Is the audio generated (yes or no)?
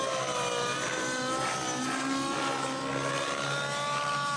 no